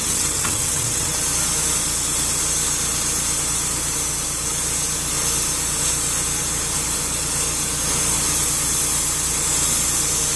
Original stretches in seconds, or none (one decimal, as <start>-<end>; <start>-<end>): 1.2-10.4